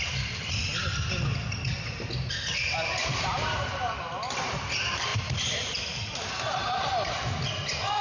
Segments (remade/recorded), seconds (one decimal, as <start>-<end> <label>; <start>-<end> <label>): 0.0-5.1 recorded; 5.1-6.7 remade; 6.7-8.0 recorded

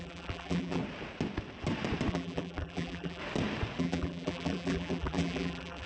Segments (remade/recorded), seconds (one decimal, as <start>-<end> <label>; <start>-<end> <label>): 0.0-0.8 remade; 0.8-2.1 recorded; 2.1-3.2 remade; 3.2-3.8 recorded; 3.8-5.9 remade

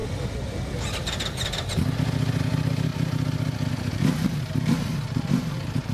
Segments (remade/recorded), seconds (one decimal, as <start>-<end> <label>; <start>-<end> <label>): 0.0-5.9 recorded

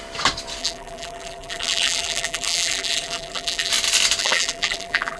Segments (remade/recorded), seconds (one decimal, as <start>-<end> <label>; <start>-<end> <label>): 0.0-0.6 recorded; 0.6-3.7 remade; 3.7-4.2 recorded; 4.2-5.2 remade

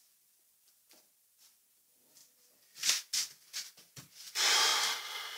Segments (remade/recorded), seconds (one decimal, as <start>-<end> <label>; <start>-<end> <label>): 0.0-5.4 recorded

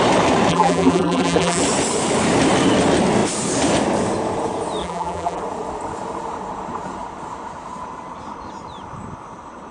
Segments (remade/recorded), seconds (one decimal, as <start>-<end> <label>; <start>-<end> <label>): 0.0-0.5 recorded; 0.5-1.6 remade; 1.6-4.8 recorded; 4.8-5.4 remade; 5.4-9.7 recorded